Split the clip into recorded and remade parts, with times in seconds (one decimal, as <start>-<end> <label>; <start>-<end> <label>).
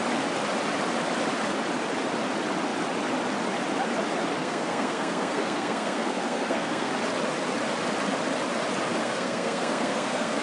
0.0-4.4 recorded; 4.4-6.9 remade; 6.9-9.0 recorded; 9.0-10.4 remade